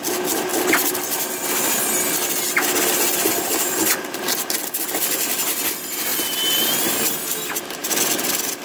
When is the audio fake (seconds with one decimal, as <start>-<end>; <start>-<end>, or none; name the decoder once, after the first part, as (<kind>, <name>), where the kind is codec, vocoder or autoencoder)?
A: 0.5-1.4 (vocoder, BigVGAN v2); 7.8-8.6